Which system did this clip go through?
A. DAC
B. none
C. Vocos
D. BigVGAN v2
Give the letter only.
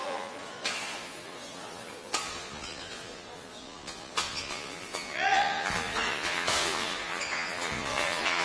C